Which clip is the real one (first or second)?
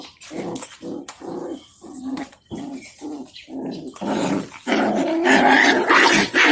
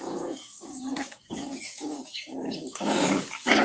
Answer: first